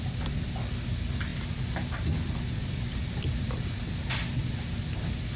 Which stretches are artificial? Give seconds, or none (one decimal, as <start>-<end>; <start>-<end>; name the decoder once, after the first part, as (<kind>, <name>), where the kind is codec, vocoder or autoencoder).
none